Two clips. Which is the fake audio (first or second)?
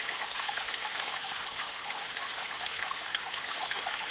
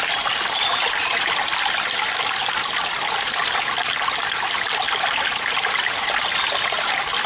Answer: first